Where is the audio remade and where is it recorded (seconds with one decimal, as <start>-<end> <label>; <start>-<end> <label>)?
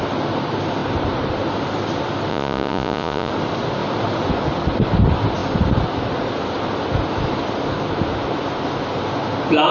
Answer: 0.0-2.3 recorded; 2.3-3.3 remade; 3.3-9.7 recorded